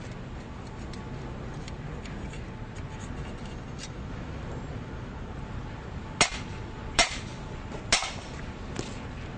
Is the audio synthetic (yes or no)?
no